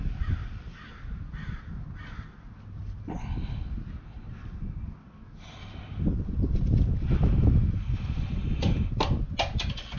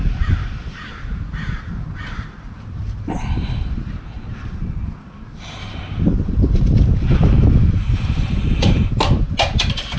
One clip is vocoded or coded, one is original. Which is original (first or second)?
first